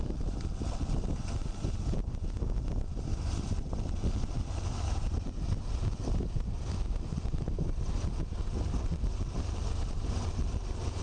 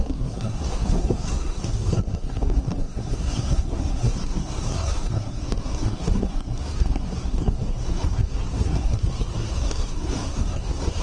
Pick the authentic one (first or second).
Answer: first